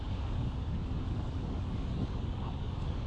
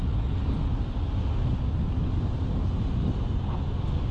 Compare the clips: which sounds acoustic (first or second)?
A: second